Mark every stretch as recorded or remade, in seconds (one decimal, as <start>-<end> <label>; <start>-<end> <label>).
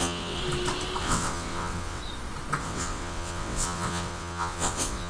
0.0-0.4 remade; 0.4-1.0 recorded; 1.0-2.0 remade; 2.0-2.6 recorded; 2.6-5.1 remade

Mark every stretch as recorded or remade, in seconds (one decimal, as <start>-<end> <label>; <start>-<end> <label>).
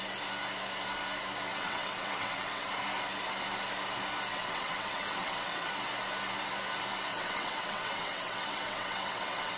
0.0-1.5 recorded; 1.5-2.7 remade; 2.7-4.3 recorded; 4.3-5.7 remade; 5.7-7.1 recorded; 7.1-9.6 remade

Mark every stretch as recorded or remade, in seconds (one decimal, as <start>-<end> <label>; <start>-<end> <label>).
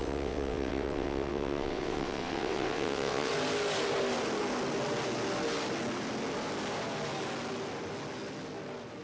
0.0-3.3 remade; 3.3-9.0 recorded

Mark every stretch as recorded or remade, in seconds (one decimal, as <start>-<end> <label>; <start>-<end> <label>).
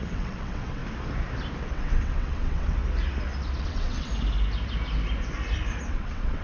0.0-0.8 remade; 0.8-1.7 recorded; 1.7-2.8 remade; 2.8-3.6 recorded; 3.6-4.1 remade; 4.1-5.9 recorded; 5.9-6.4 remade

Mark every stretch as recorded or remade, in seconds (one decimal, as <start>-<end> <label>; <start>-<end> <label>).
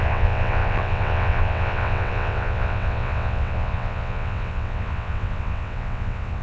0.0-6.4 remade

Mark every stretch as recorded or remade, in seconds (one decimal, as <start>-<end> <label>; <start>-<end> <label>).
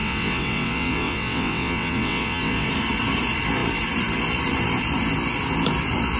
0.0-2.7 remade; 2.7-6.2 recorded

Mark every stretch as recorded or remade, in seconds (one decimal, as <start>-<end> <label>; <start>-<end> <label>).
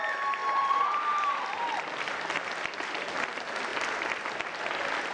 0.0-5.1 recorded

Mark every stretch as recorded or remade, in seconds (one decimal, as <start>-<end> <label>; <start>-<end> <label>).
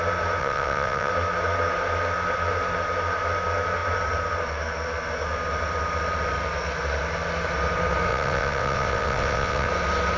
0.0-0.4 recorded; 0.4-1.1 remade; 1.1-8.1 recorded; 8.1-9.7 remade; 9.7-10.2 recorded